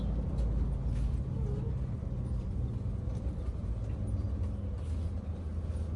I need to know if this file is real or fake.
real